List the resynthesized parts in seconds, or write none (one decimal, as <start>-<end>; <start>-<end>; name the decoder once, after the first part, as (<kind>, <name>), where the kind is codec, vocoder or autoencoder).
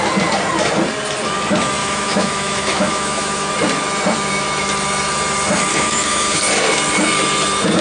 1.8-3.5 (autoencoder, DAC-VAE); 5.7-6.4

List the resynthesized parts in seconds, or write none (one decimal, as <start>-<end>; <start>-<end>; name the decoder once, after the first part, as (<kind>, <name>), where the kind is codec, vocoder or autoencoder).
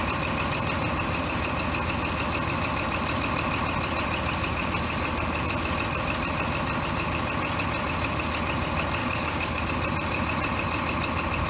9.0-9.6 (codec, DAC)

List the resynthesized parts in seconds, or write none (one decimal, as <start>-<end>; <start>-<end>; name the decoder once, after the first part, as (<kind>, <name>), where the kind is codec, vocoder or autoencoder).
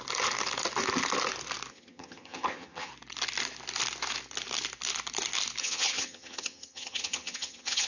1.7-2.9 (vocoder, HiFi-GAN); 5.6-7.9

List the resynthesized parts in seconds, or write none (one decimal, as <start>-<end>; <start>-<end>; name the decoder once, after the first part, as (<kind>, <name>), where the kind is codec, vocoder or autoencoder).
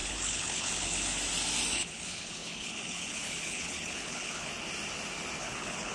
0.0-1.1 (codec, HILCodec); 1.7-4.5; 5.4-5.9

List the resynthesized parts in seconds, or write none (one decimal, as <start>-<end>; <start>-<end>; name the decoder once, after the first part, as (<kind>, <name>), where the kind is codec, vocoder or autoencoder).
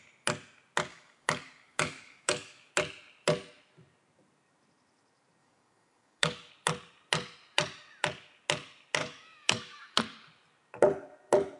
0.9-2.7 (codec, DAC); 5.4-6.5; 9.0-10.0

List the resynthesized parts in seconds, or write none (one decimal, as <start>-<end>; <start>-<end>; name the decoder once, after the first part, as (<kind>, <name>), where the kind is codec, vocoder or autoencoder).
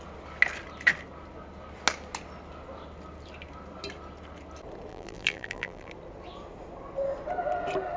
4.9-5.9 (vocoder, BigVGAN v2)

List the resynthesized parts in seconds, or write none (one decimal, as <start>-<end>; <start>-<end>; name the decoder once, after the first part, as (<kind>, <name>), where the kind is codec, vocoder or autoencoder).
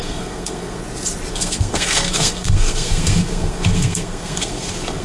0.0-0.8 (codec, SNAC); 1.3-5.0